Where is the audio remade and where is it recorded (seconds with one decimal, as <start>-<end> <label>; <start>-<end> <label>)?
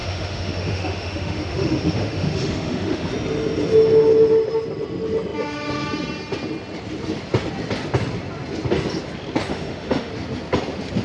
0.0-3.1 remade; 3.1-9.5 recorded; 9.5-10.1 remade; 10.1-11.0 recorded